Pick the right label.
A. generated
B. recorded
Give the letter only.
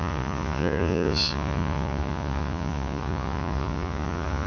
A